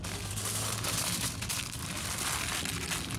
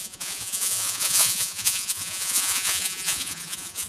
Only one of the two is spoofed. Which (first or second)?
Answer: second